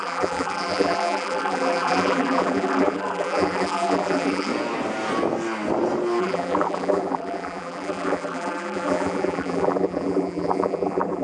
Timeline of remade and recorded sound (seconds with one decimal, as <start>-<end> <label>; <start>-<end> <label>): 0.0-4.5 remade; 4.5-6.2 recorded; 6.2-11.2 remade